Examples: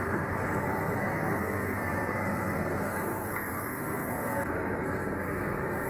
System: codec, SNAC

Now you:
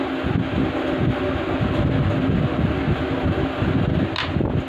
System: none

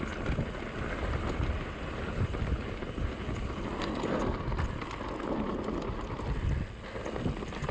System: none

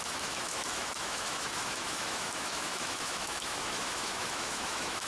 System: autoencoder, DAC-VAE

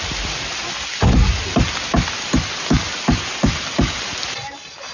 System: none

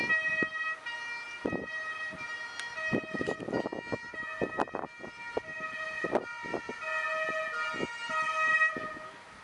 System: none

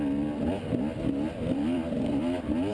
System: none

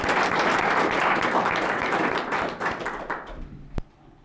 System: none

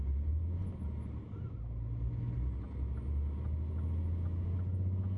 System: none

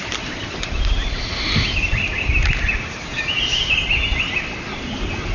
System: none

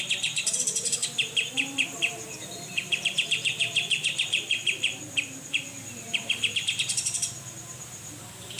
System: vocoder, BigVGAN v2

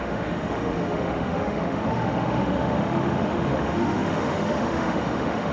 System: autoencoder, DAC-VAE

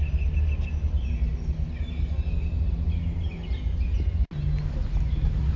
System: none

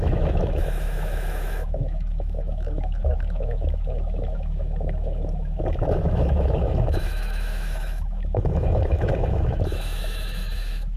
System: autoencoder, DAC-VAE